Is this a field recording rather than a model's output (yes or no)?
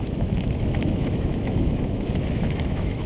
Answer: no